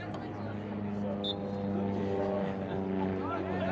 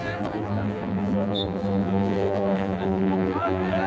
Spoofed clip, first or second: second